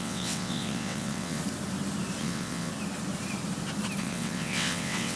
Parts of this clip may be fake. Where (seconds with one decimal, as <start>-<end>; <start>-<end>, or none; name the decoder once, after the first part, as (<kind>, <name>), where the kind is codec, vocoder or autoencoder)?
0.0-1.4 (vocoder, WaveNeXt); 2.2-2.7; 4.0-5.2